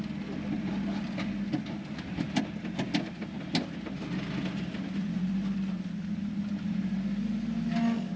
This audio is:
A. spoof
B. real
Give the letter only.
B